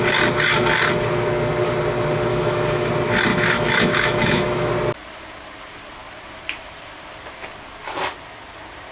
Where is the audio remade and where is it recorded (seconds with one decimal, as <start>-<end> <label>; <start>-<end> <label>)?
0.0-2.3 recorded; 2.3-2.9 remade; 2.9-3.3 recorded; 3.3-4.7 remade; 4.7-8.9 recorded

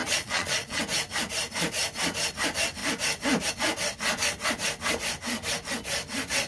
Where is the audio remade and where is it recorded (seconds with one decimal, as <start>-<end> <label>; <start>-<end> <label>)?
0.0-0.8 remade; 0.8-6.5 recorded

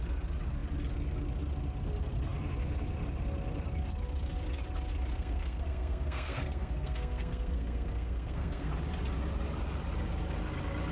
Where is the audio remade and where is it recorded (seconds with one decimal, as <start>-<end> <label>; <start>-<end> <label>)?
0.0-5.1 recorded; 5.1-8.7 remade; 8.7-10.9 recorded

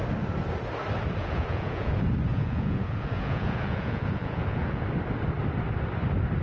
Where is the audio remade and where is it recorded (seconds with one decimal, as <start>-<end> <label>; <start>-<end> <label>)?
0.0-1.2 recorded; 1.2-1.9 remade; 1.9-2.3 recorded; 2.3-4.8 remade; 4.8-6.4 recorded

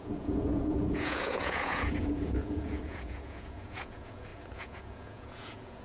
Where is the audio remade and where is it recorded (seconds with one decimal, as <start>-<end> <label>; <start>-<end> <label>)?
0.0-5.8 remade

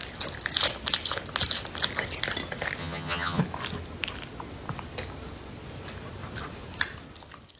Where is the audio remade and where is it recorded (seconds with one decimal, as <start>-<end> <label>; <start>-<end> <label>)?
0.0-2.8 recorded; 2.8-3.4 remade; 3.4-7.6 recorded